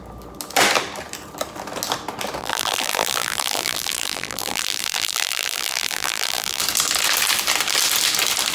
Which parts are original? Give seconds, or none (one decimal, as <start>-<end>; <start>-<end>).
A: 0.0-2.4; 6.6-8.5

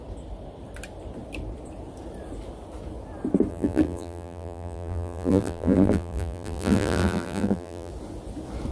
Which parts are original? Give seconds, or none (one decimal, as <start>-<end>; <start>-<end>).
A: 0.0-3.5; 7.9-8.7

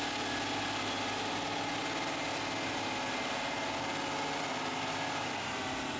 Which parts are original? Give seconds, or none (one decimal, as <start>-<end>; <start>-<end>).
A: 0.0-6.0

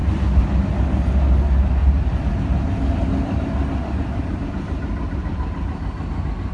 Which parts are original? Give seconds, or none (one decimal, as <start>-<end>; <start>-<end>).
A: 0.0-1.8; 4.5-6.5